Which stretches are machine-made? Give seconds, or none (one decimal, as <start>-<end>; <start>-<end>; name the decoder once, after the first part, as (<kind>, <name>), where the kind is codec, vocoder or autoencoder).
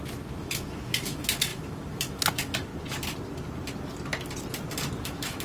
0.0-2.7 (autoencoder, DAC-VAE); 5.0-5.4